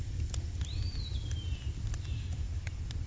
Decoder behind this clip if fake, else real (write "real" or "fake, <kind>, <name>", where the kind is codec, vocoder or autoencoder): real